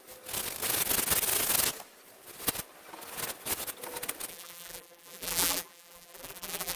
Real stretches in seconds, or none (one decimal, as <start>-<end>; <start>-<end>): 0.0-4.3